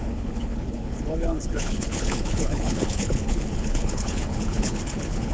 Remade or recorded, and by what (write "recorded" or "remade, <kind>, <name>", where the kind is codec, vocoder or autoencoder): remade, codec, HILCodec